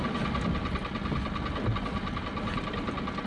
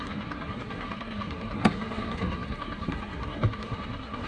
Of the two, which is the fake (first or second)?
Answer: second